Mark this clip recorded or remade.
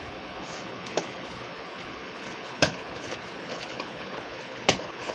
remade